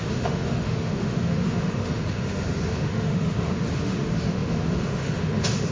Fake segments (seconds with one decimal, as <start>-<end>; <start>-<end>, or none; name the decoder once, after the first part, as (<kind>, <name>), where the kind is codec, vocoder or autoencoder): 0.0-5.7 (autoencoder, DAC-VAE)